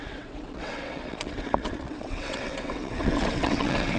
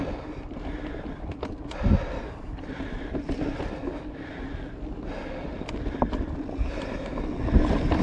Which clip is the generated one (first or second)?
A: first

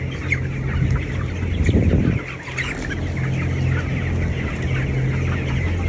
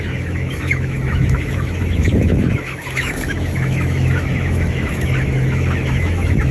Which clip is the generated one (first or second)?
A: second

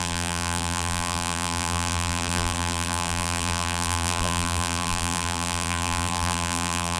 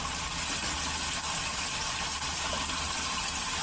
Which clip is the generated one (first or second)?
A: first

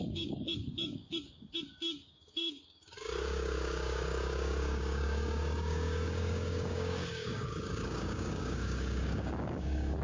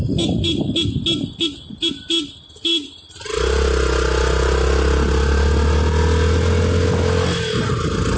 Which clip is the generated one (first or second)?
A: first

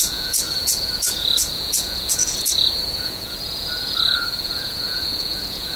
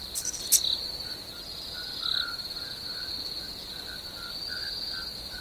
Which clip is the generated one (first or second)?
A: first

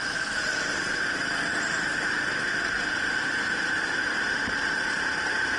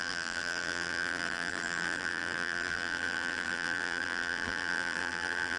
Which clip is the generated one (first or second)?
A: second